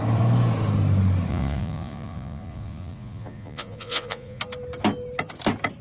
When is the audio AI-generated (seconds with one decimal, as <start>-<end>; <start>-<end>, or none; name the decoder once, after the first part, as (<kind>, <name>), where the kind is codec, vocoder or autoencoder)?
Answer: 1.3-4.4 (vocoder, Vocos)